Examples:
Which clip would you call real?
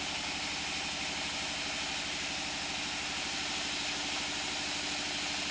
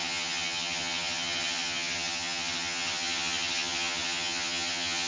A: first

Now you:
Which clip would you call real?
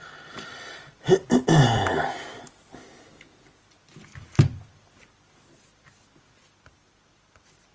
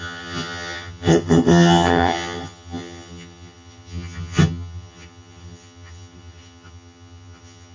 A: first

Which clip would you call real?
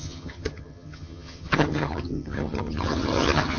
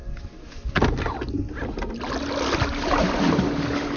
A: second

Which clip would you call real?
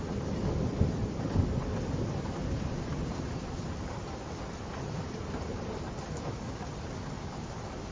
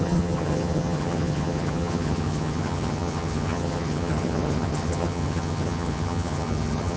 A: first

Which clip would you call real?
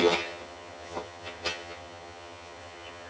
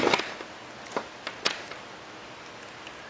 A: second